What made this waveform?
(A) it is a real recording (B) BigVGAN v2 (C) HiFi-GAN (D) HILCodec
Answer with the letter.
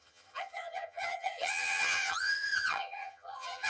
C